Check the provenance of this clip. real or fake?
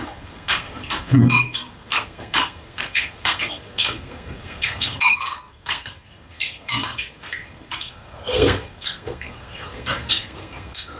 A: fake